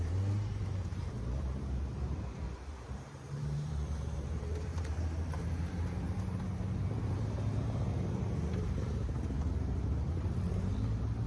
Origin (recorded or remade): remade